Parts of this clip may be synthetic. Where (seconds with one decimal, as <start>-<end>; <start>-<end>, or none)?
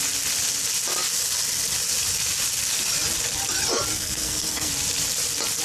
3.9-4.7